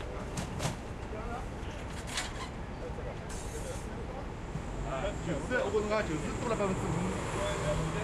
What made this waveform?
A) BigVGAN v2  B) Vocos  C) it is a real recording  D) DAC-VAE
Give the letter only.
C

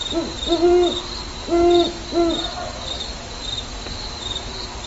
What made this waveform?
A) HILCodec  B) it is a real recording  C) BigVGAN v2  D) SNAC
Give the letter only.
B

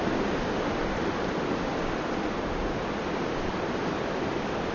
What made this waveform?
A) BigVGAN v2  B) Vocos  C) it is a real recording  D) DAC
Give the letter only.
C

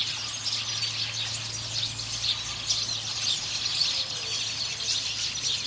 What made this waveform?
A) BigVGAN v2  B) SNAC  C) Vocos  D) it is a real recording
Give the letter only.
D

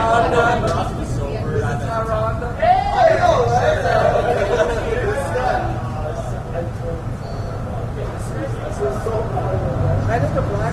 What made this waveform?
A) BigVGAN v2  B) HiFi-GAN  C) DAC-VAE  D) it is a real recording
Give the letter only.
D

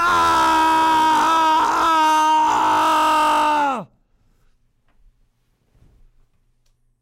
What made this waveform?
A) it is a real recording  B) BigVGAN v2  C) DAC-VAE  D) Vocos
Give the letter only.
A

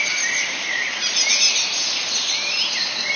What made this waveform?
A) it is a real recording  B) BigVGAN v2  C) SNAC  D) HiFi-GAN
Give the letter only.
B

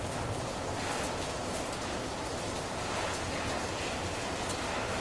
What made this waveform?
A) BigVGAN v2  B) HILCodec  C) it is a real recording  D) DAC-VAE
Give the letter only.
C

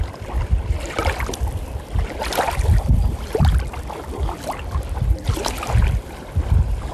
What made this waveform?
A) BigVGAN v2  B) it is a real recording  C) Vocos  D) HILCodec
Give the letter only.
B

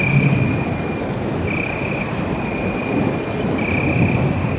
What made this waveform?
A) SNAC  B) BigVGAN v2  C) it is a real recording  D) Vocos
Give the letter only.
C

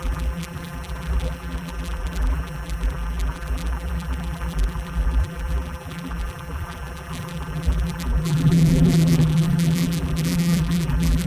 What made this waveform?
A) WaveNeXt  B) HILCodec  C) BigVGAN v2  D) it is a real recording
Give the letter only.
C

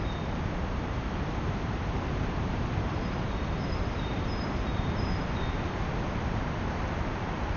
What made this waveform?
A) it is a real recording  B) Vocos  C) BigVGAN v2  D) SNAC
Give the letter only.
C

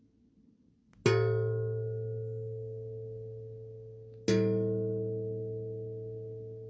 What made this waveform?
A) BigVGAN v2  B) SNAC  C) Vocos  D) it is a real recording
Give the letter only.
D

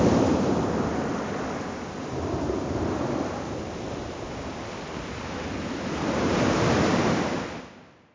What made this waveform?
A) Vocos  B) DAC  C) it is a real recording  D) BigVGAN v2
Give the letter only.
C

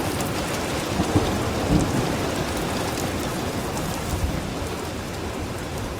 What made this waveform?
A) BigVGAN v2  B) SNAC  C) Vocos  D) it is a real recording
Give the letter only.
D